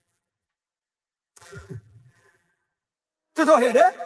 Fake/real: fake